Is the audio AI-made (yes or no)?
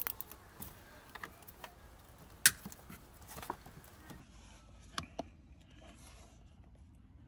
no